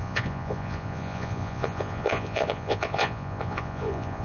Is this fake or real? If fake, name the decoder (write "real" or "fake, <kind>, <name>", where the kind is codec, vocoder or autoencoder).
fake, vocoder, Vocos